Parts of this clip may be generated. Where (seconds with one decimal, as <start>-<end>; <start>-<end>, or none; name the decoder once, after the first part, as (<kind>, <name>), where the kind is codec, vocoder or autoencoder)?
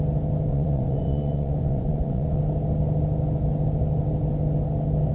0.5-2.4 (vocoder, Vocos)